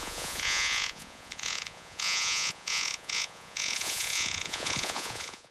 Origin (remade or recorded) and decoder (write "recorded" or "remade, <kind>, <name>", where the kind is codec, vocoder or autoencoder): remade, vocoder, Vocos